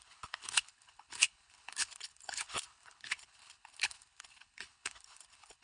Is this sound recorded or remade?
remade